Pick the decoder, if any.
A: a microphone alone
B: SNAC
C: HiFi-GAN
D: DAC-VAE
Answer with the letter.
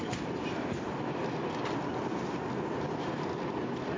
A